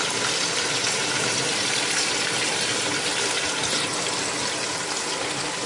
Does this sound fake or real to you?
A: real